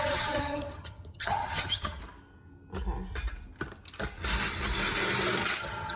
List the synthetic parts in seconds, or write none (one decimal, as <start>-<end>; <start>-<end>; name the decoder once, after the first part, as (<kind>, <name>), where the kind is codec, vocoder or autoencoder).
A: 0.0-2.0 (vocoder, HiFi-GAN); 5.6-6.0